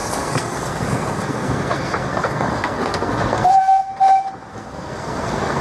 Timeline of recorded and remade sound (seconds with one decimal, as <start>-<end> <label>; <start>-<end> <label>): 0.0-3.9 remade; 3.9-4.5 recorded; 4.5-5.6 remade